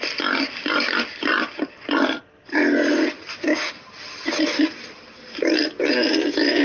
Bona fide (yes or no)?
yes